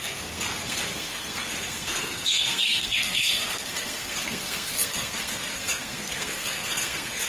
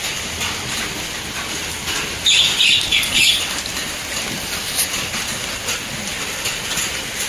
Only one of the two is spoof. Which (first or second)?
first